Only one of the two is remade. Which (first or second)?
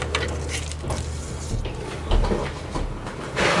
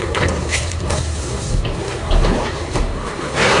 second